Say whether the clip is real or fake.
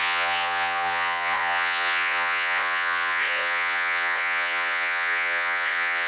fake